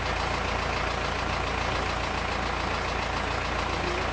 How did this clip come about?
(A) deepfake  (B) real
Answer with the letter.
B